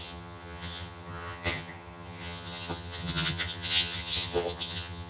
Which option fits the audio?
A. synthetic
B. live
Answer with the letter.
A